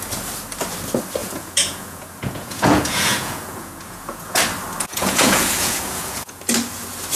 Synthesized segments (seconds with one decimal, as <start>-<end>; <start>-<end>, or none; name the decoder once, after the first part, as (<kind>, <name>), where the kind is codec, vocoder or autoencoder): 1.2-4.4 (vocoder, Vocos); 4.9-6.4